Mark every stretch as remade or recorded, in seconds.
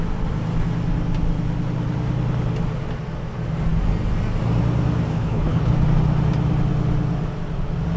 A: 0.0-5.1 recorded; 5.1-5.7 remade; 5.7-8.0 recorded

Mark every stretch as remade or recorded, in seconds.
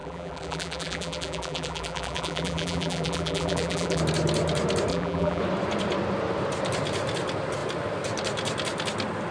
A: 0.0-4.0 remade; 4.0-4.9 recorded; 4.9-5.4 remade; 5.4-9.3 recorded